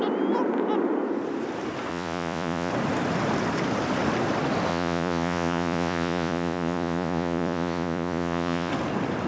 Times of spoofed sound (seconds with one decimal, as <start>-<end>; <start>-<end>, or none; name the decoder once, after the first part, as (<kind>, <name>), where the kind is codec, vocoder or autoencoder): 1.9-2.7 (vocoder, Vocos); 4.7-8.7